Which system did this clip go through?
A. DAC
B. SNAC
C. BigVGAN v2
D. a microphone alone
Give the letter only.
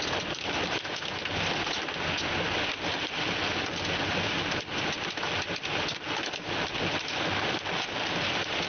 D